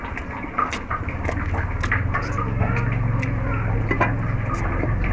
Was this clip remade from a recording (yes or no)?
no